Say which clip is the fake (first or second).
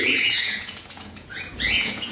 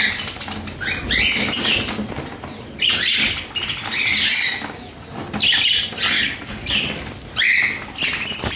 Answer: first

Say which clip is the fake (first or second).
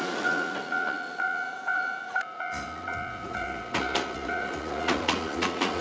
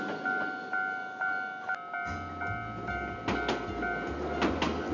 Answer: first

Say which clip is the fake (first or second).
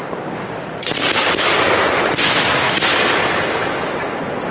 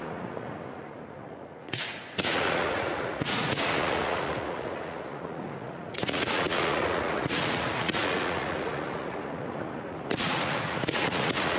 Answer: second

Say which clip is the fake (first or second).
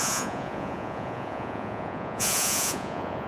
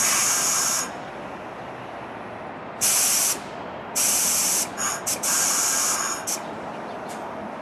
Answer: first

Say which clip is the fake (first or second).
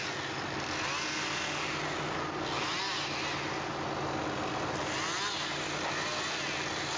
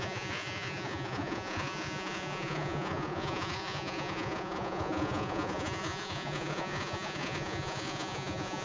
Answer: second